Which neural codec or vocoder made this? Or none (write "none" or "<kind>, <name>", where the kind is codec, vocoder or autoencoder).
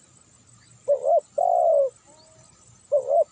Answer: none